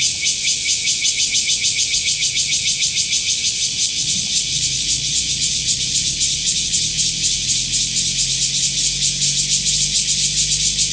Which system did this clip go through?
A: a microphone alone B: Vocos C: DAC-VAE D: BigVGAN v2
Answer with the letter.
A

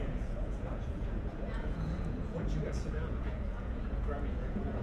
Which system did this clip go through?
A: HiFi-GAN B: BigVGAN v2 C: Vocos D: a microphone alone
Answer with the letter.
C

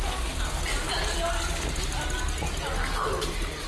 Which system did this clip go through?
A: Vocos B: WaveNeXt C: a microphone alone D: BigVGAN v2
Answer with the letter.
C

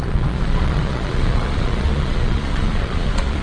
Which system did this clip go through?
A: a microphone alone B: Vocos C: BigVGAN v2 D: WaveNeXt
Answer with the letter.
B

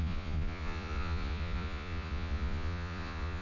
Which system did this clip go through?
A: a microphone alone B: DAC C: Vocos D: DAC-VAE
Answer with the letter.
C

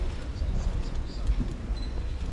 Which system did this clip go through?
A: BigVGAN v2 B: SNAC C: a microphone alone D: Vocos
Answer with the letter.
D